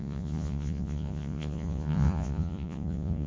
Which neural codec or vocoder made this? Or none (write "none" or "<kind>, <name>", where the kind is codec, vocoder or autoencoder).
vocoder, Vocos